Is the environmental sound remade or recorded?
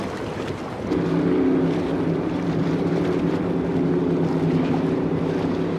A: recorded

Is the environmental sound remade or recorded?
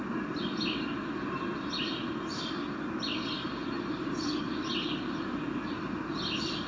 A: recorded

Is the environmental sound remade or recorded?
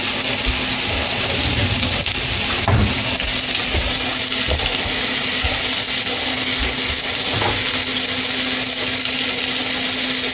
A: recorded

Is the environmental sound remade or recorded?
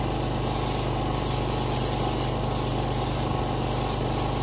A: recorded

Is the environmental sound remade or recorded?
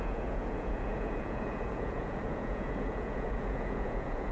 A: remade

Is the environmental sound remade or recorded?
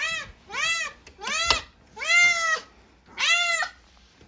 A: recorded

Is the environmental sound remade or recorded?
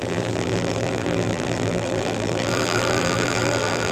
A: remade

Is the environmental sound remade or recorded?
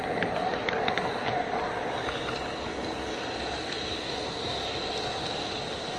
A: recorded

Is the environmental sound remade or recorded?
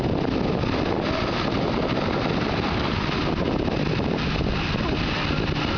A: recorded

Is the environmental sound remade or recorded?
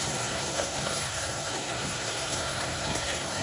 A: remade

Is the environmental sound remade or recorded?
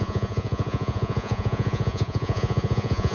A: remade